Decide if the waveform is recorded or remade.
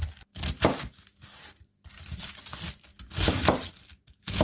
recorded